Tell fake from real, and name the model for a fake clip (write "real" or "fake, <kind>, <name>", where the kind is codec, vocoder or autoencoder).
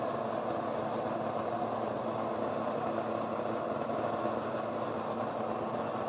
real